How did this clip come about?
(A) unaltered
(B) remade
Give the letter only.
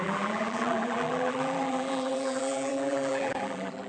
B